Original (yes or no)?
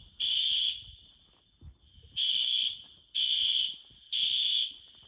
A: yes